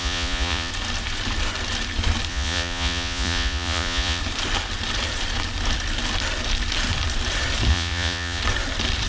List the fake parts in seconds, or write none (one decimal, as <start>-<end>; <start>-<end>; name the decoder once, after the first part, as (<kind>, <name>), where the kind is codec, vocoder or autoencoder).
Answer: 0.0-0.7 (vocoder, Vocos); 2.3-4.2; 7.7-8.4